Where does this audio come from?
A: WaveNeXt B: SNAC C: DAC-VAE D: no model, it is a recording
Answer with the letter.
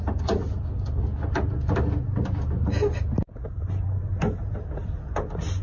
D